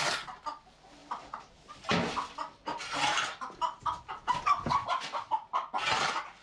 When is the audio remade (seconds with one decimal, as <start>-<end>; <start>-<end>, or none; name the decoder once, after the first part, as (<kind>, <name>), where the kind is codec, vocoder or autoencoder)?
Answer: none